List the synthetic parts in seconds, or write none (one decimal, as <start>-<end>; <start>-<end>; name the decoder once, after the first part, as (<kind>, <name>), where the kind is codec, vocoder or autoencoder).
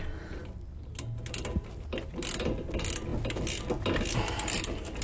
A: none